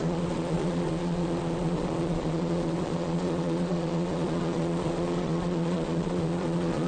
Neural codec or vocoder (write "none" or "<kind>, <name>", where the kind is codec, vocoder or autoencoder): vocoder, Vocos